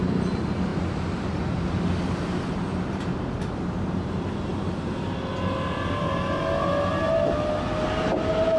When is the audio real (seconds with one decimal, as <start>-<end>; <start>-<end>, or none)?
0.0-8.6